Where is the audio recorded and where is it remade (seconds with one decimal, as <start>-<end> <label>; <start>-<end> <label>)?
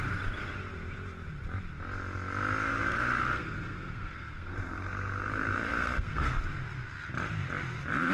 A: 0.0-2.7 recorded; 2.7-6.4 remade; 6.4-8.1 recorded